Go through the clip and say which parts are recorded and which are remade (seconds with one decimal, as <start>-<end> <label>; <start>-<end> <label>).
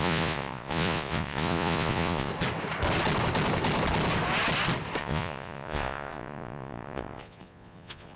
0.0-2.3 remade; 2.3-5.0 recorded; 5.0-8.2 remade